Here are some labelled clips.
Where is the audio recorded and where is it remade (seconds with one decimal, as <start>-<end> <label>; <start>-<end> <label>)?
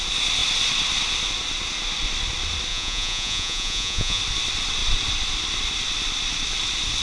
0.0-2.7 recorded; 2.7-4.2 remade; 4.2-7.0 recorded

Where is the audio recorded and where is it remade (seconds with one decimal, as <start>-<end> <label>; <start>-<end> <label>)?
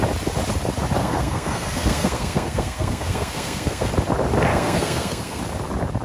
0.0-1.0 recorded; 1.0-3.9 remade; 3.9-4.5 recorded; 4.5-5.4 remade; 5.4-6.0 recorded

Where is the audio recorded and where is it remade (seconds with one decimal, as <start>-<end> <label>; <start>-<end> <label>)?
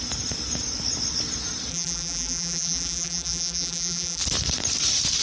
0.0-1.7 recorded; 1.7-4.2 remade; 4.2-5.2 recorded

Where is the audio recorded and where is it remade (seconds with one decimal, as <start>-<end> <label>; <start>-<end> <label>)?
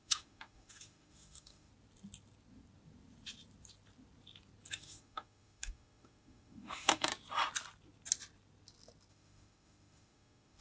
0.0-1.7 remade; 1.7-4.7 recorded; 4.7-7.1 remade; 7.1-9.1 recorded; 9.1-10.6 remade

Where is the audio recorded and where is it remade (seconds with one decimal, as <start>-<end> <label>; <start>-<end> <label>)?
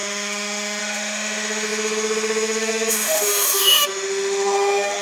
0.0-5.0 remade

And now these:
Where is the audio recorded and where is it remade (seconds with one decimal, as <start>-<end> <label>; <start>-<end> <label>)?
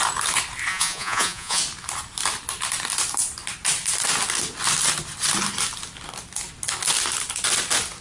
0.0-0.7 recorded; 0.7-1.6 remade; 1.6-8.0 recorded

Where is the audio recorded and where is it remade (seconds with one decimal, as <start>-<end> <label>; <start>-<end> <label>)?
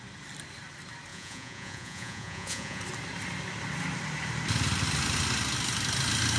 0.0-1.1 recorded; 1.1-2.8 remade; 2.8-6.4 recorded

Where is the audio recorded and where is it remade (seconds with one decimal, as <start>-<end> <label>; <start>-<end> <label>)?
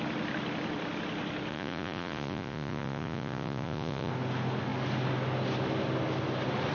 0.0-1.5 recorded; 1.5-4.1 remade; 4.1-6.7 recorded